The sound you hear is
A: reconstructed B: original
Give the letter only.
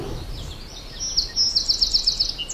B